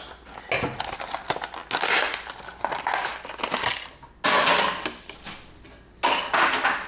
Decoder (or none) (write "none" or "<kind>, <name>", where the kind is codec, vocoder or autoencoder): none